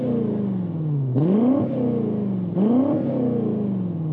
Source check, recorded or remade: recorded